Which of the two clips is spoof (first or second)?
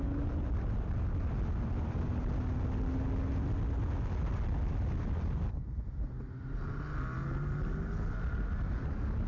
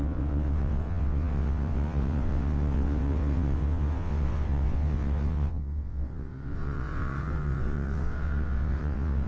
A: second